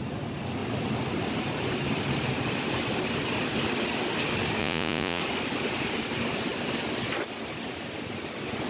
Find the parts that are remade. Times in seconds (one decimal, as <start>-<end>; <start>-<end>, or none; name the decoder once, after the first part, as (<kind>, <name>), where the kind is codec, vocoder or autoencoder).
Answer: 4.6-5.2 (vocoder, Vocos)